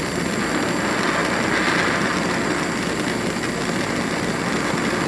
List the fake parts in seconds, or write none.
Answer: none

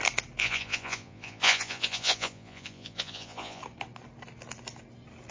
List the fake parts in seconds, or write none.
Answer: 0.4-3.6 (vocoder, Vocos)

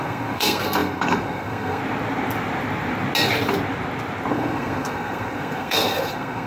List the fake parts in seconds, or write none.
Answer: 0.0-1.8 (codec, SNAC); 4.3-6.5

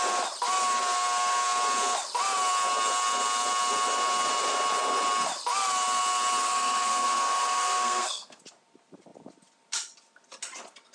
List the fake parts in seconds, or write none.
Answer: 6.4-8.4 (codec, SNAC)

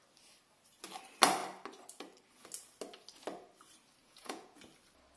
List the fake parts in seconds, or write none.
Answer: 4.0-4.6 (vocoder, Vocos)